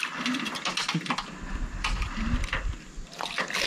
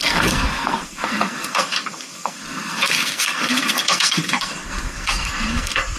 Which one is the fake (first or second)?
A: second